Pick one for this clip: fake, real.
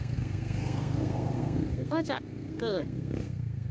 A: fake